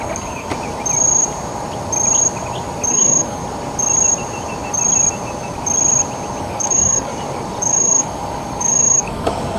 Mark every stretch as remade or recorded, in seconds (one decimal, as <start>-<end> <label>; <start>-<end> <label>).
0.0-0.5 remade; 0.5-2.9 recorded; 2.9-3.4 remade; 3.4-6.4 recorded; 6.4-7.1 remade; 7.1-7.6 recorded; 7.6-9.6 remade